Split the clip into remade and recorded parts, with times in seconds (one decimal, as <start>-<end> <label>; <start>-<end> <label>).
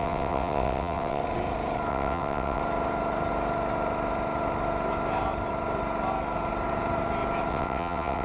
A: 0.0-1.2 remade; 1.2-1.9 recorded; 1.9-2.6 remade; 2.6-7.5 recorded; 7.5-8.2 remade